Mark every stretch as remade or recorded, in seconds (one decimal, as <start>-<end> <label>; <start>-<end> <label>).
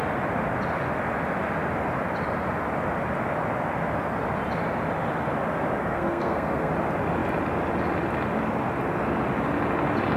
0.0-5.8 recorded; 5.8-6.7 remade; 6.7-10.2 recorded